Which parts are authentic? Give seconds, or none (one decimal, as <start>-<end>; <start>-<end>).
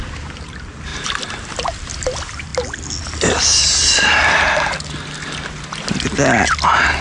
0.0-7.0